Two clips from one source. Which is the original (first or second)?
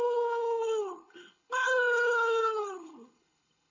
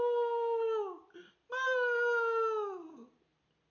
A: second